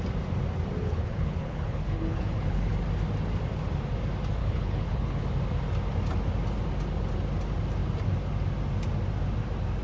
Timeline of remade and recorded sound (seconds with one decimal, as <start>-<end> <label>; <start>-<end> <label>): 0.0-0.8 recorded; 0.8-2.7 remade; 2.7-4.4 recorded; 4.4-5.2 remade; 5.2-9.8 recorded